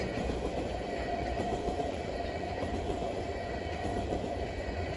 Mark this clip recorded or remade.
remade